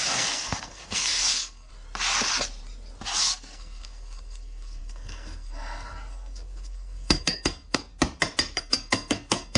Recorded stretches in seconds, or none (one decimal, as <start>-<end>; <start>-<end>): 1.7-3.2; 7.9-8.6